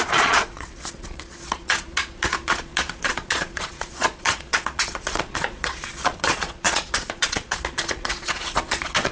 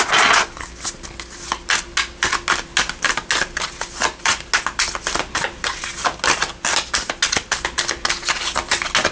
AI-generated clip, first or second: first